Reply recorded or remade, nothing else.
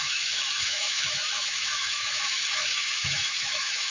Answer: remade